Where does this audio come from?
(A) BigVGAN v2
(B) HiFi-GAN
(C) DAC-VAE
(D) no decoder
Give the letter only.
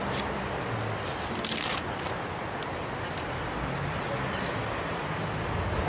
A